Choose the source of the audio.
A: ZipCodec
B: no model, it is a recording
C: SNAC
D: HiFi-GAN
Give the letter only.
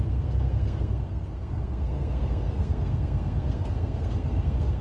C